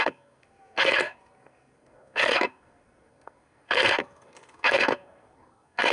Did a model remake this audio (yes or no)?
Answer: yes